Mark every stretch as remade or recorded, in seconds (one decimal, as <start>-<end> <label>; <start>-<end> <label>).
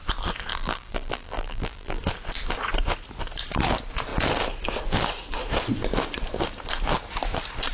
0.0-0.5 recorded; 0.5-2.0 remade; 2.0-7.7 recorded